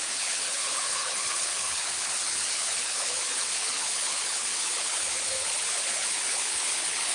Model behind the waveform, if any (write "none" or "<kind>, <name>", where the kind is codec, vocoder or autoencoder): codec, HILCodec